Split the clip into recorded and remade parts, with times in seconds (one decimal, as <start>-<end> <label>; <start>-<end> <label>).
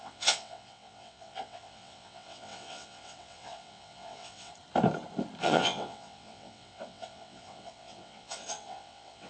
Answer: 0.0-4.5 remade; 4.5-5.4 recorded; 5.4-9.3 remade